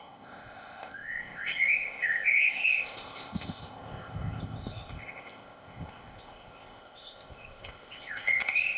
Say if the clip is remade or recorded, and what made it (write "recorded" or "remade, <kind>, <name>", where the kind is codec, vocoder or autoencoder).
remade, codec, ZipCodec